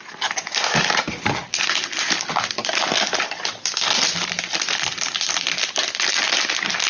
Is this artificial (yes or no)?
no